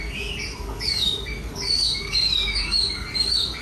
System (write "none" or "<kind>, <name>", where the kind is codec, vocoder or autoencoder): codec, DAC